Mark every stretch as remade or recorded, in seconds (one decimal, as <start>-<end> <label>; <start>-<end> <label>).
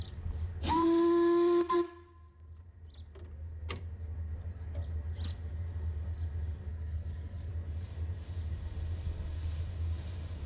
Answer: 0.0-6.7 recorded; 6.7-7.5 remade; 7.5-10.5 recorded